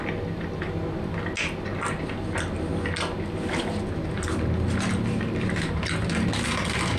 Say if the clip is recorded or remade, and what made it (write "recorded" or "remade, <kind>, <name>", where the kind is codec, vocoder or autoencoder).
recorded